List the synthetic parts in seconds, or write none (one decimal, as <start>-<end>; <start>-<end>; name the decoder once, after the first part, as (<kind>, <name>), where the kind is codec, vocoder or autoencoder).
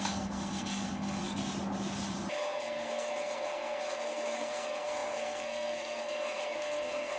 0.0-1.4 (codec, SNAC); 2.3-7.2